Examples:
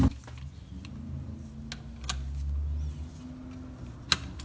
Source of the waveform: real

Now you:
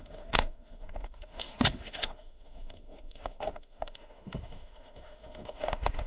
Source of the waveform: fake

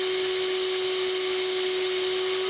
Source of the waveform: real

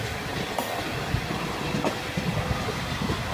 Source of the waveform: real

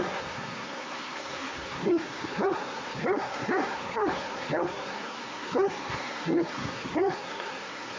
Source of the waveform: fake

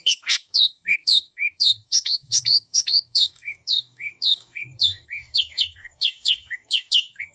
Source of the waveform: fake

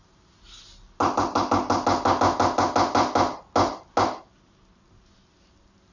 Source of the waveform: real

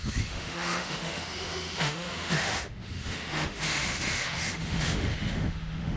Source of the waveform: fake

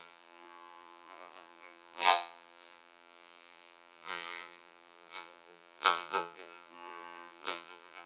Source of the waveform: fake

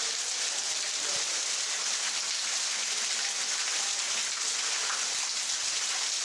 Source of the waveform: real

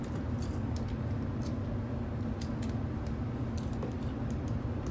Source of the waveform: real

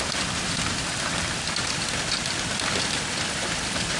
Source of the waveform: fake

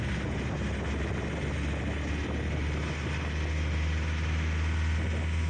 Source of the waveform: real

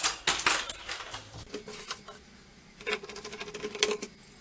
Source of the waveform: real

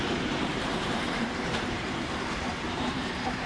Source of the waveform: fake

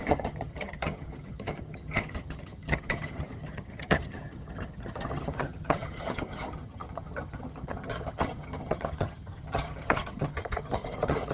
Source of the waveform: fake